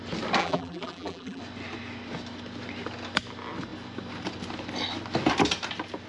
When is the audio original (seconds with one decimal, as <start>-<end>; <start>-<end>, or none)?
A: 0.0-0.4; 1.4-6.1